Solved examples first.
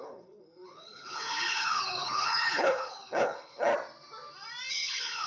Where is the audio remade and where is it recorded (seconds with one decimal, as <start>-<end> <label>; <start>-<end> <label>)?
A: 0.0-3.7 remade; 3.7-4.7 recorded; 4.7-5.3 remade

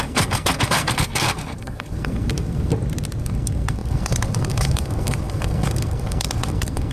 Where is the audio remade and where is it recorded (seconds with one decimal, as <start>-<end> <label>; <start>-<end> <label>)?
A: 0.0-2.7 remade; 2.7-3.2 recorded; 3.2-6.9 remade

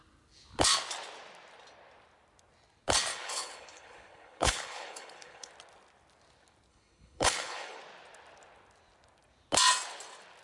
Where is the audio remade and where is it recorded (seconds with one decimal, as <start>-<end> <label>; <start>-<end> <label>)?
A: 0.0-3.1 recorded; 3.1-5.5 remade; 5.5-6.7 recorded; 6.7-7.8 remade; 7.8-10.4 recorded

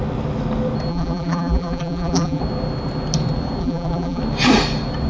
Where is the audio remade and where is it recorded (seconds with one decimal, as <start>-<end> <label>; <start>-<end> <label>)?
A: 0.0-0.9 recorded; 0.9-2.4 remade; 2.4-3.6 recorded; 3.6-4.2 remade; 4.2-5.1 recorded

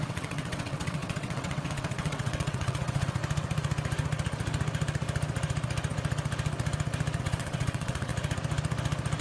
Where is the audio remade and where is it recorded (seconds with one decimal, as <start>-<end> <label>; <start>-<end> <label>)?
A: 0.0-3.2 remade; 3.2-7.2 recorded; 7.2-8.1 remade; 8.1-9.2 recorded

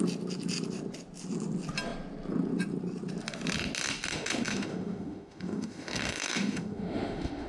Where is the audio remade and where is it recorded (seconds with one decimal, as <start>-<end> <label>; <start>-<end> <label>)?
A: 0.0-4.1 recorded; 4.1-7.5 remade

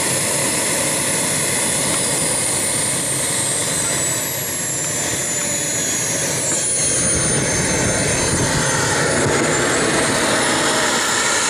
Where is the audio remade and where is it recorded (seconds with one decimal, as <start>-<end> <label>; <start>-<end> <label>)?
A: 0.0-11.5 recorded

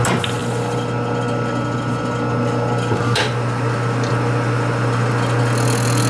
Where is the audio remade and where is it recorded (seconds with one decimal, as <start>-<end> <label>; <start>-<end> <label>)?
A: 0.0-6.1 recorded